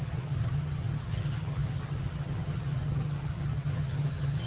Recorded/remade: remade